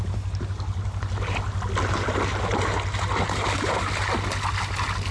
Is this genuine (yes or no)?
yes